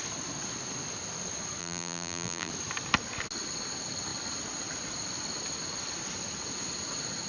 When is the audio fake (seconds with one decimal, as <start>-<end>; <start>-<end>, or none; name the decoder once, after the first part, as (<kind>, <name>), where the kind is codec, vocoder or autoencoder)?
1.6-2.5 (vocoder, BigVGAN v2)